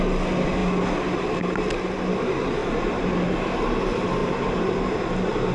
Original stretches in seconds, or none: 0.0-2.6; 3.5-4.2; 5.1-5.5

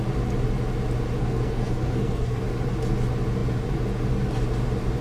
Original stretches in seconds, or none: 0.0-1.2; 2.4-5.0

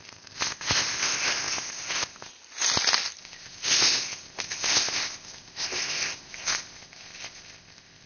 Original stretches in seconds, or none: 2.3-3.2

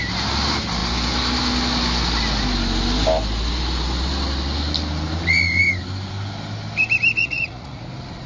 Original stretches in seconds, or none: 0.0-7.2; 7.8-8.3